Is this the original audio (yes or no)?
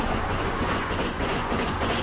no